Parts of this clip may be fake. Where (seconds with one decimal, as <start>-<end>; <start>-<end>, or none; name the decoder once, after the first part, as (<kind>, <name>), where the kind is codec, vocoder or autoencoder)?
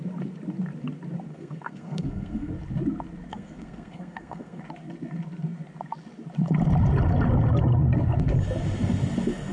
1.3-2.5 (codec, SNAC); 3.3-4.6